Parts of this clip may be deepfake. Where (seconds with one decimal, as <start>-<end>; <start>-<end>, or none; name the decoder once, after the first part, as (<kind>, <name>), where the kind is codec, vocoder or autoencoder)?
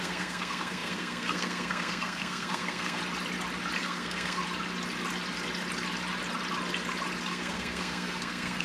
0.0-3.0 (codec, SNAC); 3.8-4.4; 7.3-8.6